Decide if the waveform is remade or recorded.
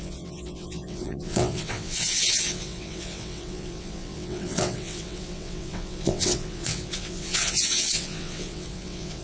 remade